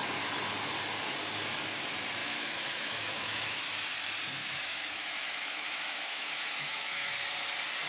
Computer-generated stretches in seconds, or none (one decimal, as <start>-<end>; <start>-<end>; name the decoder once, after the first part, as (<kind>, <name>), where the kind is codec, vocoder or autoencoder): 2.2-3.6 (autoencoder, DAC-VAE); 4.4-7.1